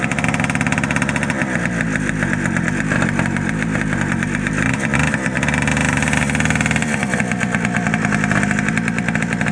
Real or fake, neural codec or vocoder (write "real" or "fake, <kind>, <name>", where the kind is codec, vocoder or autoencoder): real